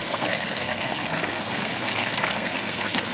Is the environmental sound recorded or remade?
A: remade